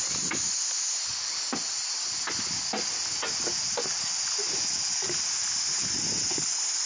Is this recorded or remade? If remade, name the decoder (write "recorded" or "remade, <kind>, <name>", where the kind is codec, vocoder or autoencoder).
recorded